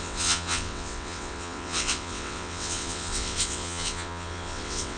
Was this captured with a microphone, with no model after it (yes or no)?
no